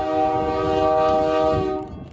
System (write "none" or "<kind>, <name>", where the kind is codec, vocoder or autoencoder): none